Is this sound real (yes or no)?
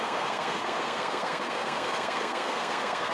no